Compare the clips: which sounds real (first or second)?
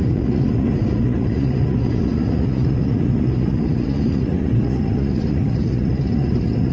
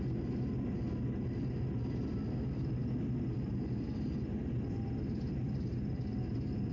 second